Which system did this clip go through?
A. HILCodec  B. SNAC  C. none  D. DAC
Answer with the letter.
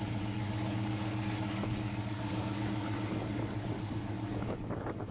D